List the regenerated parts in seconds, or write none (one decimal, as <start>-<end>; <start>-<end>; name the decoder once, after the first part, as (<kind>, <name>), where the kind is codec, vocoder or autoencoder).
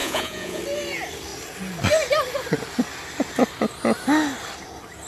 0.0-0.6 (vocoder, Vocos)